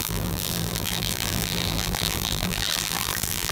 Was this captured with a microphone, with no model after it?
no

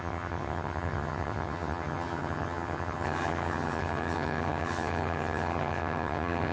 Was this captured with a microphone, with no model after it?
no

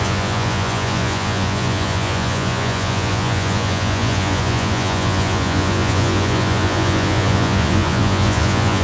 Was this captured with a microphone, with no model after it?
no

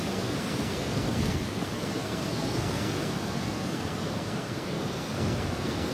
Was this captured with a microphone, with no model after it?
no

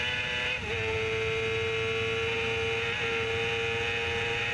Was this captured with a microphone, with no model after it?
yes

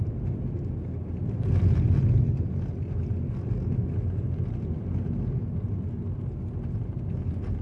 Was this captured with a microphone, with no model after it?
yes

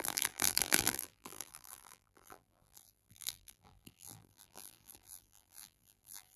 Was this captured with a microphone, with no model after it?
no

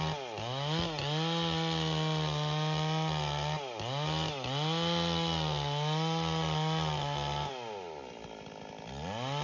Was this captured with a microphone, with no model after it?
yes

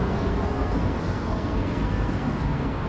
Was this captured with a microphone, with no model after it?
no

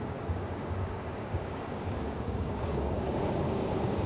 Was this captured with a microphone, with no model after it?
no